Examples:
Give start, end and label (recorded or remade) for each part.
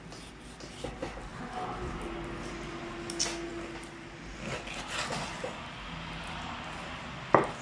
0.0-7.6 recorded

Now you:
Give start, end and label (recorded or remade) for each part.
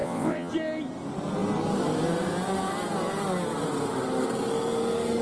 0.0-0.5 remade; 0.5-5.2 recorded